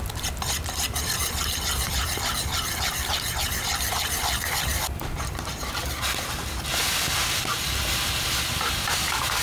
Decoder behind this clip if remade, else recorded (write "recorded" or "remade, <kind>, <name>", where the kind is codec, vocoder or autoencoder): remade, vocoder, BigVGAN v2